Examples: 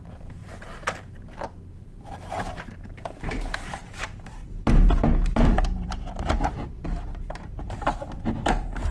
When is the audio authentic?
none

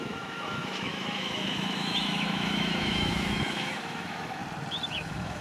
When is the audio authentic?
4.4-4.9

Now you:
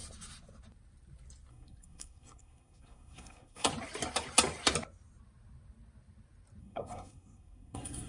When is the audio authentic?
0.0-1.5; 3.7-6.6